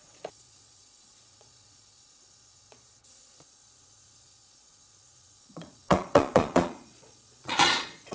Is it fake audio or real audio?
fake